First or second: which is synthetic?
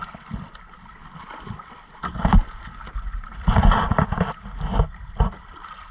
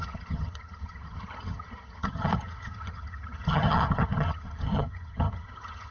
second